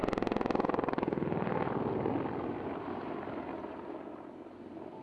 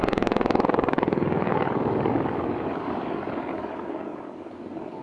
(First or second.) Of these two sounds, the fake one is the second